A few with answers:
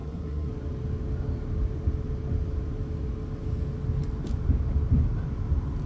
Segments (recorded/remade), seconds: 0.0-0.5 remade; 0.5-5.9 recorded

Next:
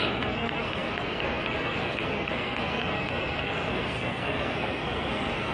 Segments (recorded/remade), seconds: 0.0-5.5 remade

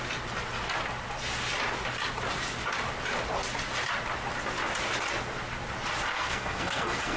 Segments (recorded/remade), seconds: 0.0-6.1 recorded; 6.1-7.2 remade

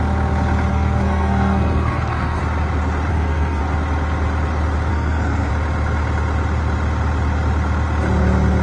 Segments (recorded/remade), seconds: 0.0-0.7 recorded; 0.7-2.4 remade; 2.4-3.1 recorded; 3.1-3.6 remade; 3.6-4.9 recorded; 4.9-5.5 remade; 5.5-8.6 recorded

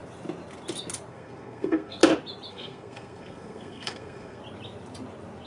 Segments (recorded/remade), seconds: 0.0-1.1 recorded; 1.1-2.0 remade; 2.0-2.5 recorded; 2.5-4.4 remade; 4.4-5.5 recorded

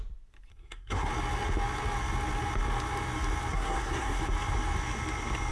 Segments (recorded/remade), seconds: 0.0-0.5 recorded; 0.5-1.1 remade; 1.1-3.5 recorded; 3.5-4.2 remade; 4.2-5.5 recorded

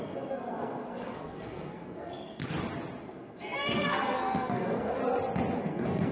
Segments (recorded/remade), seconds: 0.0-2.4 remade; 2.4-3.0 recorded; 3.0-5.0 remade; 5.0-5.6 recorded; 5.6-6.1 remade

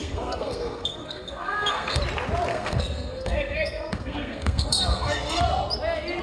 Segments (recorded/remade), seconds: 0.0-2.0 remade; 2.0-2.5 recorded; 2.5-5.4 remade; 5.4-6.2 recorded